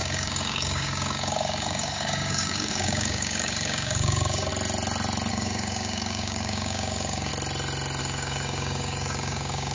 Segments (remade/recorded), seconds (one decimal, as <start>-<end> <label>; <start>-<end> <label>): 0.0-4.5 remade; 4.5-5.3 recorded; 5.3-7.3 remade; 7.3-8.0 recorded; 8.0-9.7 remade